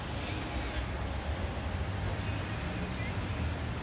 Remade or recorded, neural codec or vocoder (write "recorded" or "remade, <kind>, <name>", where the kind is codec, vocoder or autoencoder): recorded